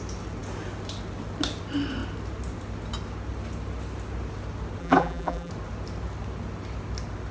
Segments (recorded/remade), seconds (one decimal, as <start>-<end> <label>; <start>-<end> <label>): 0.0-4.8 recorded; 4.8-5.5 remade; 5.5-7.3 recorded